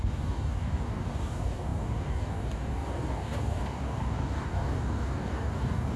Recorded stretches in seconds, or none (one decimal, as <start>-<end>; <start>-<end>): none